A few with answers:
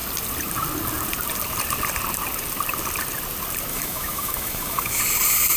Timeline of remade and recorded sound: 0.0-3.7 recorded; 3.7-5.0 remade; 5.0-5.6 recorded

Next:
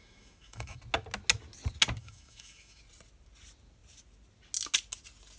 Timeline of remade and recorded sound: 0.0-0.8 remade; 0.8-2.0 recorded; 2.0-2.8 remade; 2.8-5.4 recorded

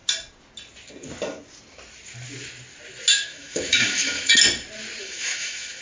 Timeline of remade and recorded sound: 0.0-3.1 recorded; 3.1-4.3 remade; 4.3-5.0 recorded; 5.0-5.8 remade

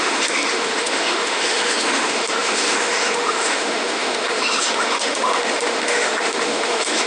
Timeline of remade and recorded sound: 0.0-7.1 remade

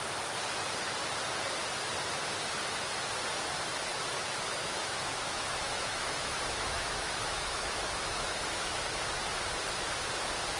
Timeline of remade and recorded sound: 0.0-3.9 recorded; 3.9-9.0 remade; 9.0-10.6 recorded

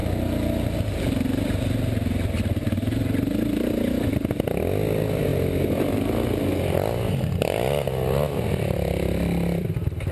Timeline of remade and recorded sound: 0.0-10.1 recorded